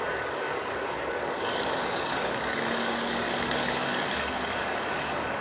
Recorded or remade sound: remade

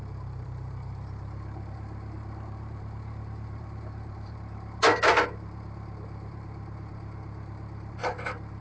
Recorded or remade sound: remade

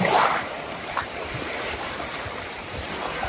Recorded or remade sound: remade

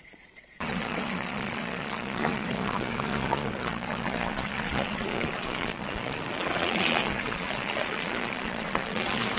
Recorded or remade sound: remade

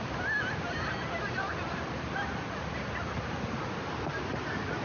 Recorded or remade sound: recorded